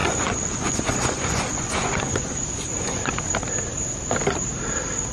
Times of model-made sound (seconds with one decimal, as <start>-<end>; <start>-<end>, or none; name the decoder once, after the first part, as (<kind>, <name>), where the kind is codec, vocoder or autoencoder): 0.0-3.1 (vocoder, Vocos)

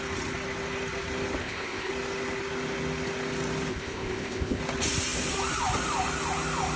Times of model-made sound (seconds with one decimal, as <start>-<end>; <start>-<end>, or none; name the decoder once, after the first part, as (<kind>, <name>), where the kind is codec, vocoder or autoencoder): 1.4-1.9 (codec, ZipCodec); 3.7-4.6

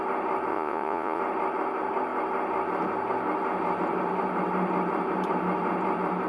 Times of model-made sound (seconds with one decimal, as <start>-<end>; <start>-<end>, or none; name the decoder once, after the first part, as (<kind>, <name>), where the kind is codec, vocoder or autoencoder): 0.5-1.2 (vocoder, Vocos)